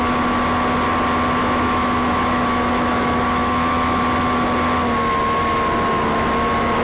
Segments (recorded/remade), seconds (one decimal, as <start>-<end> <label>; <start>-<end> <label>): 0.0-1.4 recorded; 1.4-4.0 remade; 4.0-6.8 recorded